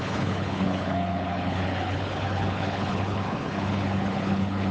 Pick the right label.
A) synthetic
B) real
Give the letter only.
A